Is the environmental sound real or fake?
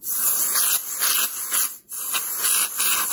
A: real